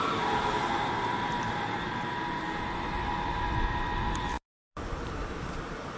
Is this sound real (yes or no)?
no